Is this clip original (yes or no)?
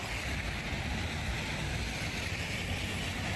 yes